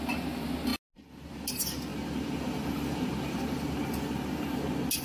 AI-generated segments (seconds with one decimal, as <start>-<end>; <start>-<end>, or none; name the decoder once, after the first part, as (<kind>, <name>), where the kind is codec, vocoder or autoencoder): none